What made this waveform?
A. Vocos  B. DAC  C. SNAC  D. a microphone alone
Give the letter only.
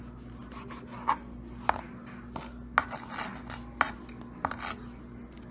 D